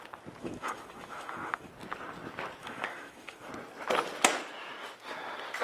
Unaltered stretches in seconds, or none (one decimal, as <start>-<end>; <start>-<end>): 0.0-0.4; 1.7-2.6; 3.5-5.6